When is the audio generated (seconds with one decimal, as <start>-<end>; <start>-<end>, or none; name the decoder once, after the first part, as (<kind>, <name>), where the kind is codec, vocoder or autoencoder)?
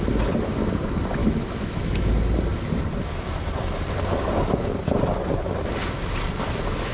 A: 1.2-2.1 (autoencoder, DAC-VAE)